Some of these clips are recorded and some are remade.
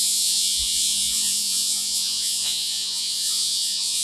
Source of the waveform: remade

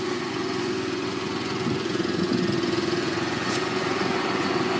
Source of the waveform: remade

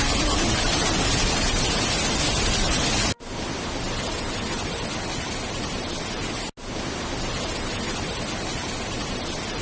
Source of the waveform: recorded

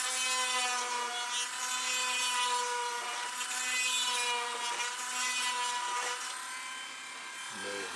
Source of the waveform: recorded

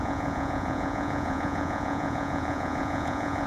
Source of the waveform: remade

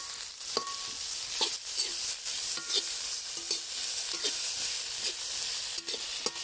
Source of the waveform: recorded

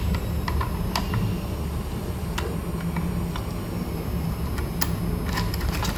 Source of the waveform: recorded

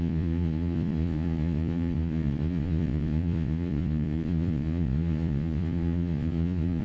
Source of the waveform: remade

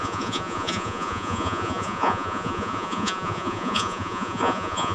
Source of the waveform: remade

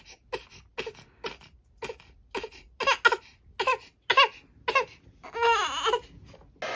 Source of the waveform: recorded